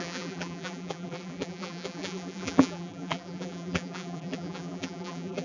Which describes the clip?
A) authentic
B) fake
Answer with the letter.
B